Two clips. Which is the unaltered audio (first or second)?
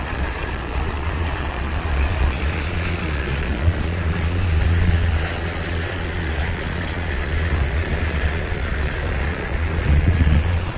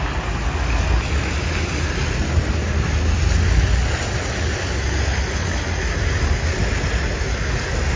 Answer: second